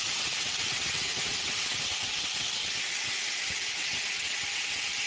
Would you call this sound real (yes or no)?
no